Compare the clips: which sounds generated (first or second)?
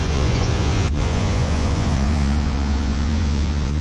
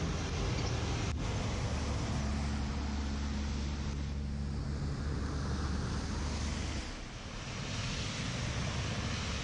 first